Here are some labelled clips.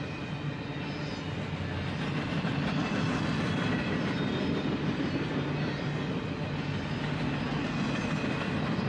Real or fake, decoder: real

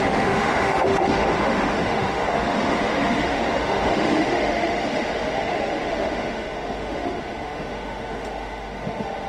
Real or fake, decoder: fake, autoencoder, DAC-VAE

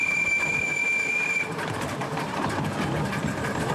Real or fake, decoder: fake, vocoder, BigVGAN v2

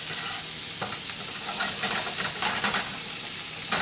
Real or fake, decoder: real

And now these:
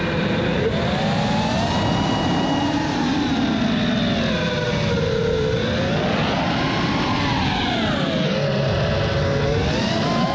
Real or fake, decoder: real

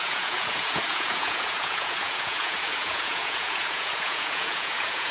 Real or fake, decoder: fake, vocoder, Vocos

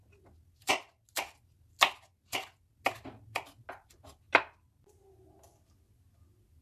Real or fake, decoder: real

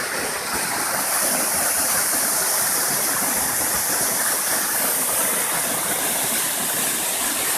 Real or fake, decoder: real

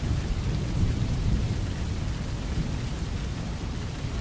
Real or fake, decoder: real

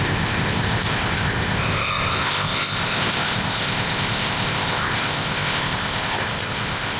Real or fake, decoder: fake, codec, ZipCodec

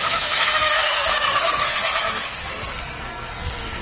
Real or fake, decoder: fake, codec, SNAC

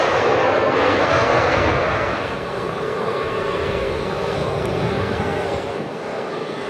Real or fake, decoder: fake, codec, SNAC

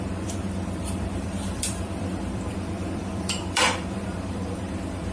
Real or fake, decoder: fake, vocoder, BigVGAN v2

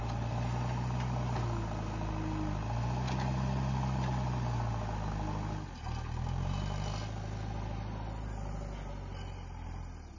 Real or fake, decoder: real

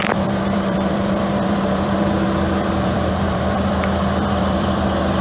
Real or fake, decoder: fake, vocoder, BigVGAN v2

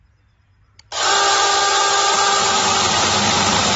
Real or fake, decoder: real